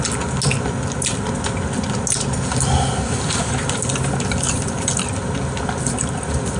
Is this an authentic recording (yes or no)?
yes